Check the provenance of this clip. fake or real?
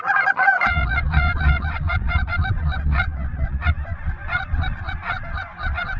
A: fake